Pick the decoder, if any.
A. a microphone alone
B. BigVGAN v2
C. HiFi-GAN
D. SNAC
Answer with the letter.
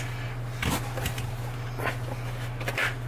A